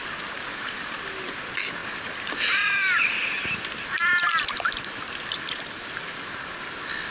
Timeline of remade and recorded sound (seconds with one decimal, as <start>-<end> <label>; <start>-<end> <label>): 0.0-7.1 recorded